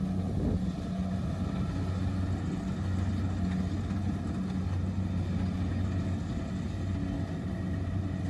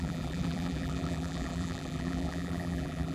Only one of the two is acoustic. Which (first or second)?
first